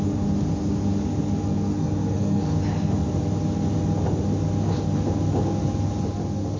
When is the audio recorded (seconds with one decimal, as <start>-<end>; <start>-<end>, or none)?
0.0-1.5; 2.4-6.6